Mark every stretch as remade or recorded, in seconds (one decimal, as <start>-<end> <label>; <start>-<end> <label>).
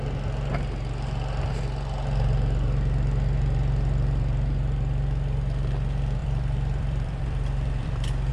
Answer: 0.0-6.2 recorded; 6.2-8.3 remade